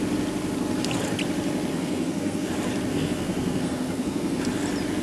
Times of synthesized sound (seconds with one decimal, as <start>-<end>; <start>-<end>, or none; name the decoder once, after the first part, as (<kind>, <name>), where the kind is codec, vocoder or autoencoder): 1.7-2.5 (codec, SNAC); 2.9-4.4